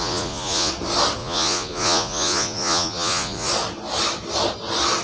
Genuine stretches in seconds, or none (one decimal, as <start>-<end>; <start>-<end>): 0.7-1.2; 3.5-5.0